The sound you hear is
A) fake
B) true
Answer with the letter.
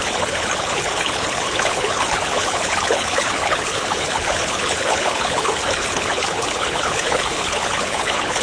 A